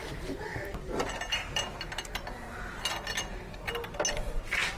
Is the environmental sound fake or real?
real